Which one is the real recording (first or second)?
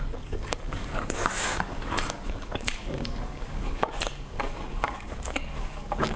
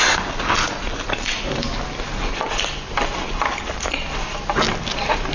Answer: second